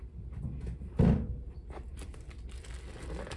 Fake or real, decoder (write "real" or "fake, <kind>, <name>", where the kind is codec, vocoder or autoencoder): real